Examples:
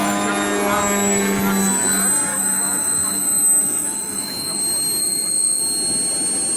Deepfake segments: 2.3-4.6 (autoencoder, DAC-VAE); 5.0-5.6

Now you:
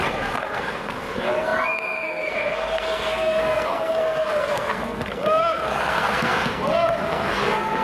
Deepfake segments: 0.0-7.8 (codec, SNAC)